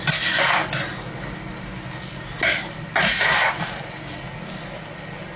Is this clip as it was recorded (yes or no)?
yes